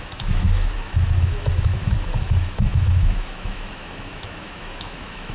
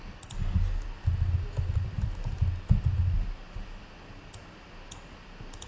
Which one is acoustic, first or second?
second